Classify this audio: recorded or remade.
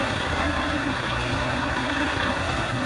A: remade